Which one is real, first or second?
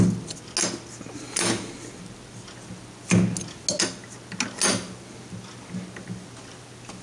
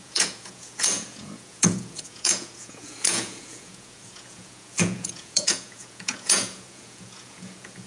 first